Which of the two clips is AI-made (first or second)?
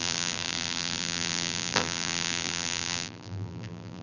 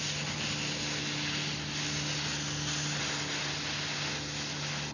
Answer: first